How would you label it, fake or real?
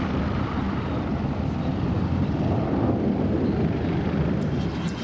real